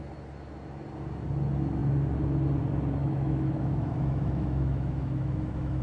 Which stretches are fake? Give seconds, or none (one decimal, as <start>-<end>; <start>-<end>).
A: 3.0-5.8